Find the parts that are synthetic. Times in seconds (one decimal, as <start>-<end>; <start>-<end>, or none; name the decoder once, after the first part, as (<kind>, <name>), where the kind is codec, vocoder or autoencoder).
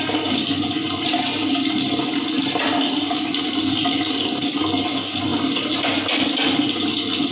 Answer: 0.8-1.5 (vocoder, BigVGAN v2); 5.3-5.9